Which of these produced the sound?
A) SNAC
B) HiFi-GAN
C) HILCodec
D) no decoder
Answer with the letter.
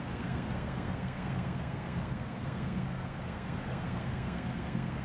A